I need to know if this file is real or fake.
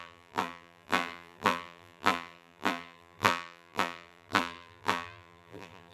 fake